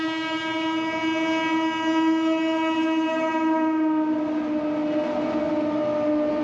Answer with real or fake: real